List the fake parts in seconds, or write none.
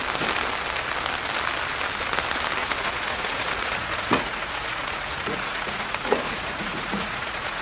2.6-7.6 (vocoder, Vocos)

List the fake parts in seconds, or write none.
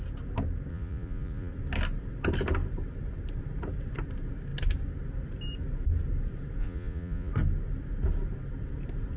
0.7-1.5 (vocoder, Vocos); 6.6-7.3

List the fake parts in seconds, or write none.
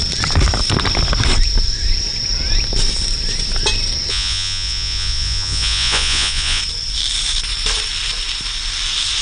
4.1-6.6 (vocoder, Vocos)